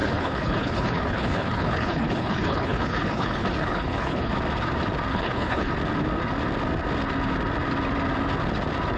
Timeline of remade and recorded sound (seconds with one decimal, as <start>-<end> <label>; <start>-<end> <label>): 0.0-4.3 remade; 4.3-5.1 recorded; 5.1-5.7 remade; 5.7-9.0 recorded